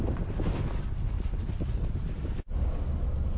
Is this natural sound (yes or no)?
yes